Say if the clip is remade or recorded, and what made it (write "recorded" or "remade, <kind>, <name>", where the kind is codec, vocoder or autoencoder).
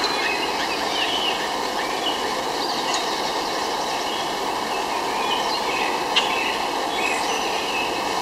recorded